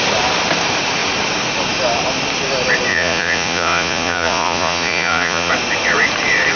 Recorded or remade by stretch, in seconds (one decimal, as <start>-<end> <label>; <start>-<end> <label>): 0.0-2.9 recorded; 2.9-5.5 remade; 5.5-6.6 recorded